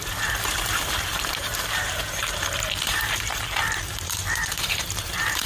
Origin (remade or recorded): remade